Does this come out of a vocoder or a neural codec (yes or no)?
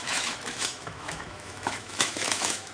yes